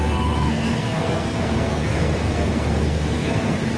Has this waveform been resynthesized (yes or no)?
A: yes